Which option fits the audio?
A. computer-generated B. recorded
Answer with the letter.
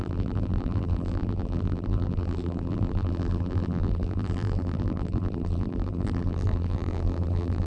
A